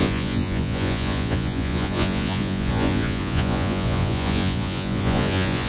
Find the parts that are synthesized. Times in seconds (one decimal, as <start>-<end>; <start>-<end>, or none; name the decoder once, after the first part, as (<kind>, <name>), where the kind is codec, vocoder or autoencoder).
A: 0.0-5.7 (vocoder, Vocos)